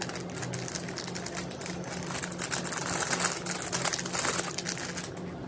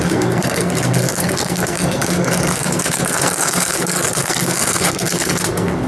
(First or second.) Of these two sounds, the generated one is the second